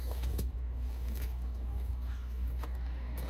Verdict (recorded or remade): remade